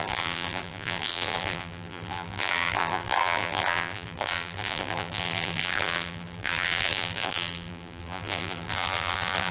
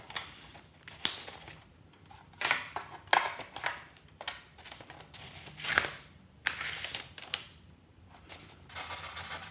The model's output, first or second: first